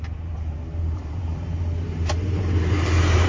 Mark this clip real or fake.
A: fake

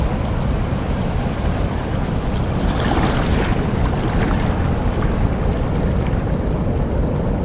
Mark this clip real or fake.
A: fake